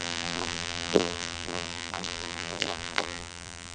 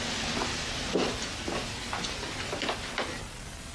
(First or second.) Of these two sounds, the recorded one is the second